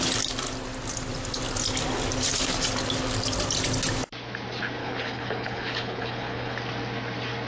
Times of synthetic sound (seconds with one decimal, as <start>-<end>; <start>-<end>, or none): 4.8-6.6